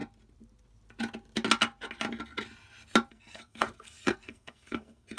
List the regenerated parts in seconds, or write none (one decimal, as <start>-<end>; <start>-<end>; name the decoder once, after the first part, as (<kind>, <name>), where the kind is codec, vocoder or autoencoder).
3.1-5.2 (codec, SNAC)